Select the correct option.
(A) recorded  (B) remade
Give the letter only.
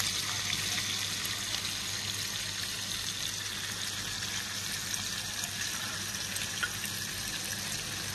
A